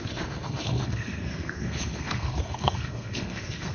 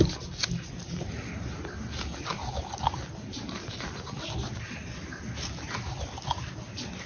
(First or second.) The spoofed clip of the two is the first